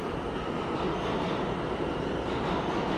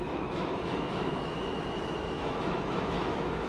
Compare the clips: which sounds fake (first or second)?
second